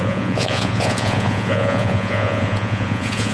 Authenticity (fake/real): fake